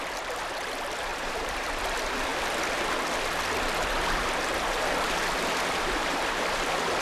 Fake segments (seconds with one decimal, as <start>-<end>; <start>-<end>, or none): 1.1-1.8